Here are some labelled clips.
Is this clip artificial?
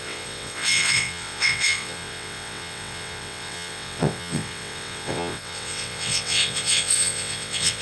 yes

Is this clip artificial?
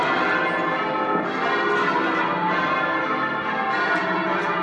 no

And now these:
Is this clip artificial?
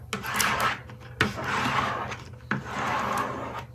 no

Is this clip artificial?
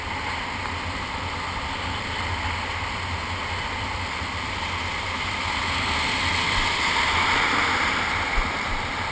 no